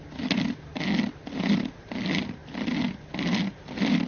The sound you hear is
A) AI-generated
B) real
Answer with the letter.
B